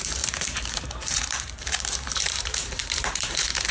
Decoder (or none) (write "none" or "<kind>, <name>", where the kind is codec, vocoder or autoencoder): vocoder, BigVGAN v2